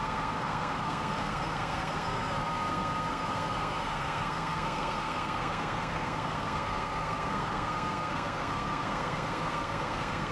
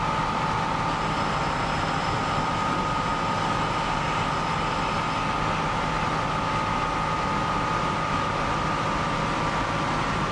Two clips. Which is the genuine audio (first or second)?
second